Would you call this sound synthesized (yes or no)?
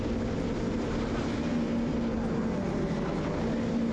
no